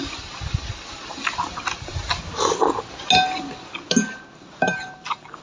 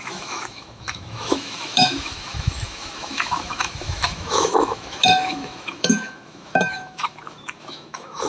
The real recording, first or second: first